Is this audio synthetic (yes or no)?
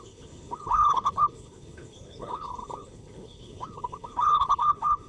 yes